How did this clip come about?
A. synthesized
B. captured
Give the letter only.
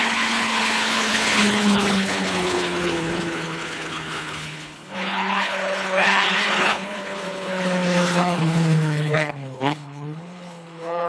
A